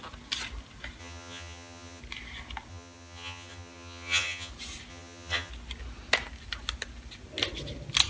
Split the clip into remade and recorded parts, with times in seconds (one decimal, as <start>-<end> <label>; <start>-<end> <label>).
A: 0.0-1.0 recorded; 1.0-2.0 remade; 2.0-2.7 recorded; 2.7-4.5 remade; 4.5-4.9 recorded; 4.9-5.5 remade; 5.5-8.1 recorded

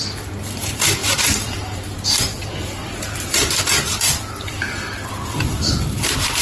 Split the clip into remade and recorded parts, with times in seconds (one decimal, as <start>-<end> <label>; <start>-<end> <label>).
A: 0.0-6.4 remade